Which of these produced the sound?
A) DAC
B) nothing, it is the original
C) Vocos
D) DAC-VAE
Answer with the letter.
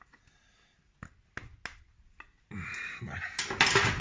B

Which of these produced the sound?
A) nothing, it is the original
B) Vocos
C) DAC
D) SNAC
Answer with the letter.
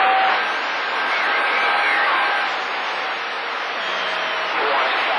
A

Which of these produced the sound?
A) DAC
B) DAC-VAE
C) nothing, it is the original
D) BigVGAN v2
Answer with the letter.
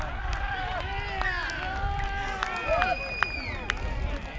C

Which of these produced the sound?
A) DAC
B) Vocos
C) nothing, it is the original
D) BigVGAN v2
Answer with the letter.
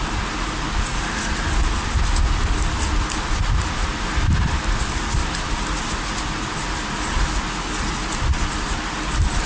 C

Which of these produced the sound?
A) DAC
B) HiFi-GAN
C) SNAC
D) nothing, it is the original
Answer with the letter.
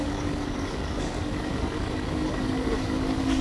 A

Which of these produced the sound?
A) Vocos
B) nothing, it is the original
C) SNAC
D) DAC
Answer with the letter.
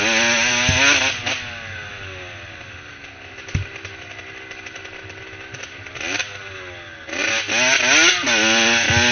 B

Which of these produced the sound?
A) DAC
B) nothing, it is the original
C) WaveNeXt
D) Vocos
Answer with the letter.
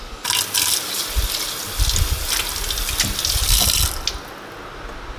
B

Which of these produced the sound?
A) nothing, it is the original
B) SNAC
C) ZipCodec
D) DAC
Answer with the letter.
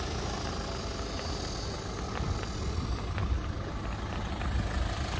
A